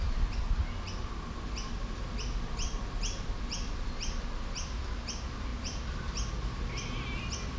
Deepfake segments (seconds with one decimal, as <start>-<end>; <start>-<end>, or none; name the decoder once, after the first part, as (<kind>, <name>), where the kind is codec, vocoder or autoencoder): none